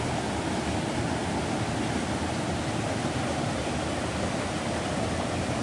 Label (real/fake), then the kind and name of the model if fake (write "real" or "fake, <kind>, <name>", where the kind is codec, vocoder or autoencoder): real